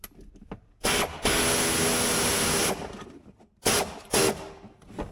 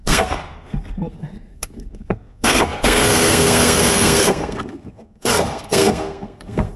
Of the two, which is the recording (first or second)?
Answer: first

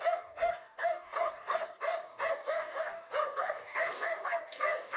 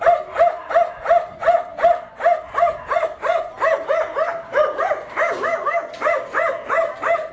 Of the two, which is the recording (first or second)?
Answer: second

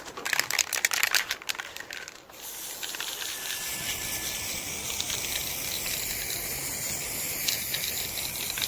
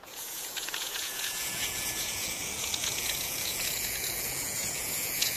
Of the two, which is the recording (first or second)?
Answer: first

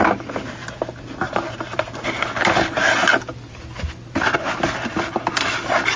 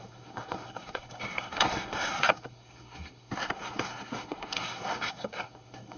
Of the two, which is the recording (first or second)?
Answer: first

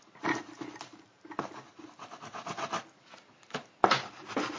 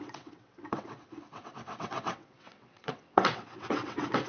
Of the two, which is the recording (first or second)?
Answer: first